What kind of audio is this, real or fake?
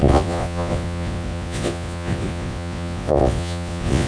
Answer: fake